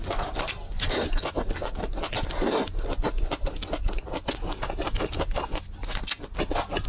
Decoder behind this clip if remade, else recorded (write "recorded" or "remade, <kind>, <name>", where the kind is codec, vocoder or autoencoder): recorded